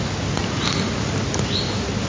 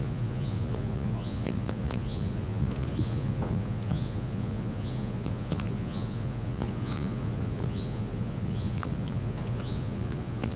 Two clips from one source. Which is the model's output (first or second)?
second